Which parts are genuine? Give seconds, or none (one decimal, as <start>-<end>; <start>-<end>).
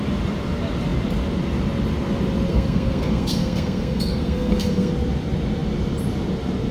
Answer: 0.0-2.5; 4.9-6.7